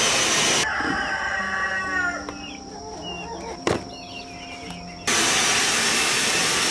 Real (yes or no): yes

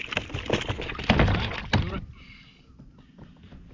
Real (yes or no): yes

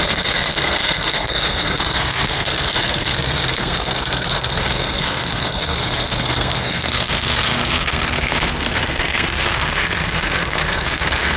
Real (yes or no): no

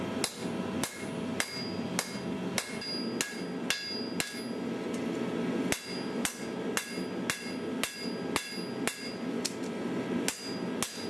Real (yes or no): yes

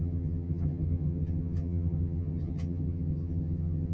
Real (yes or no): no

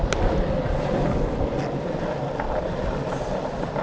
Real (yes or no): yes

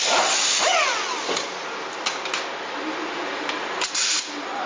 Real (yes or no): yes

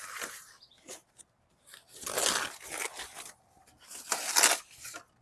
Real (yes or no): yes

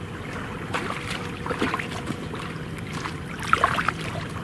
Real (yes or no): yes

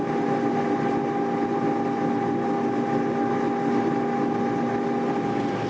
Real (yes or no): yes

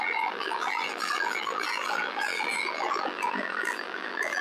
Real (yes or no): no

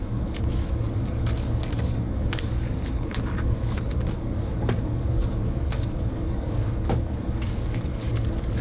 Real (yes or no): no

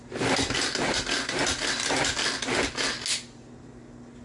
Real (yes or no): yes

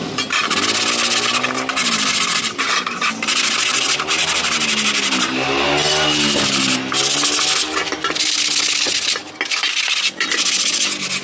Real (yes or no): yes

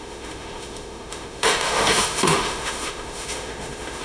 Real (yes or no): no